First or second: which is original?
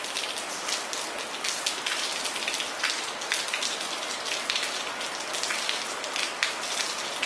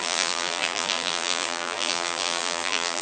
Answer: first